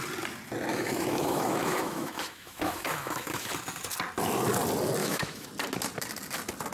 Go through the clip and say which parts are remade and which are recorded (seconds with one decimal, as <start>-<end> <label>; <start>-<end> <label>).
0.0-0.7 recorded; 0.7-3.5 remade; 3.5-5.0 recorded; 5.0-5.5 remade; 5.5-6.7 recorded